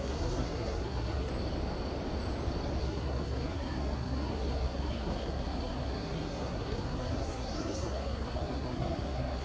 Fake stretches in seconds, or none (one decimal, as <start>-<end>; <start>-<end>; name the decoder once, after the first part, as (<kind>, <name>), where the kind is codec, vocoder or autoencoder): 0.0-1.3 (codec, SNAC); 2.8-9.4